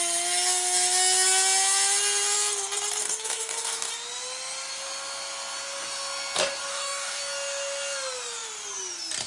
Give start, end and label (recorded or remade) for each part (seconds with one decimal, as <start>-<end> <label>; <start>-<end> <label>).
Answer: 0.0-3.0 recorded; 3.0-3.9 remade; 3.9-6.7 recorded; 6.7-7.2 remade; 7.2-9.3 recorded